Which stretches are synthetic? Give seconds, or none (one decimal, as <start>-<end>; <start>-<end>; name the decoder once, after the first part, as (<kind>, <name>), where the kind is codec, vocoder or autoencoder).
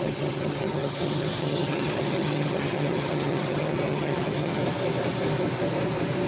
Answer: 0.0-4.6 (vocoder, HiFi-GAN)